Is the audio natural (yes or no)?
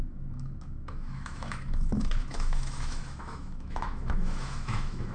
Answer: no